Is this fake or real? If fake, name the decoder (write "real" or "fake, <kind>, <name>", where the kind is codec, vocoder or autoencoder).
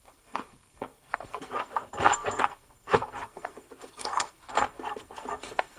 fake, codec, SNAC